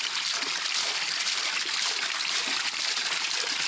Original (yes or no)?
no